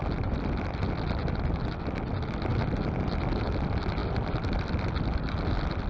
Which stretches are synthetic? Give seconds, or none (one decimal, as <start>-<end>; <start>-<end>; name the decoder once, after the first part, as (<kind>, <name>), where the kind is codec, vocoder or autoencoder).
none

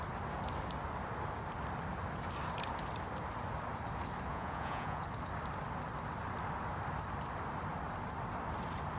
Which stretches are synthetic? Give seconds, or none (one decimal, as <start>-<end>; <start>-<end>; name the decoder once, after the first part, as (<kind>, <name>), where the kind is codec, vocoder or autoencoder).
4.3-5.0 (vocoder, Vocos)

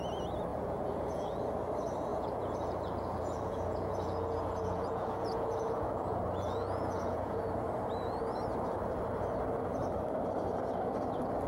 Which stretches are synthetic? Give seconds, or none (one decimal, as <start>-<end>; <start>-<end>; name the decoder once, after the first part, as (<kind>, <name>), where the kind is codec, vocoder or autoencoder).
0.5-1.4 (vocoder, Vocos); 2.1-7.4